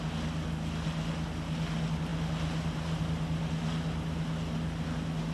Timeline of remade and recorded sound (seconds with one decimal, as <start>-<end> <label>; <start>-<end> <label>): 0.0-5.3 recorded